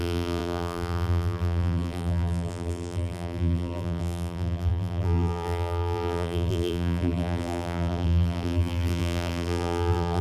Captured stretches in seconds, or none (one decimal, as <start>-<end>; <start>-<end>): none